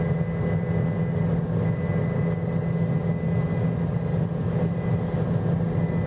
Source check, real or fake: real